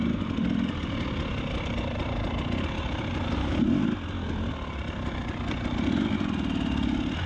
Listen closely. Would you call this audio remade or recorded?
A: recorded